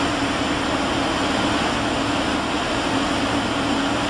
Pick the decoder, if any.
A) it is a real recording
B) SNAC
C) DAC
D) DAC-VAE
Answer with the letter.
A